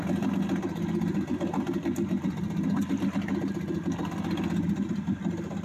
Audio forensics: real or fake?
real